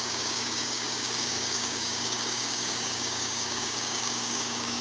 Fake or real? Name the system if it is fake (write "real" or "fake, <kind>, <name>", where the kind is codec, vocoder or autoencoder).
fake, codec, DAC